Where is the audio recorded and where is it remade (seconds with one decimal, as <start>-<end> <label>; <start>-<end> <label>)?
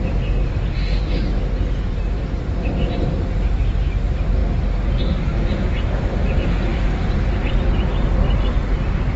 0.0-6.7 recorded; 6.7-7.5 remade; 7.5-9.2 recorded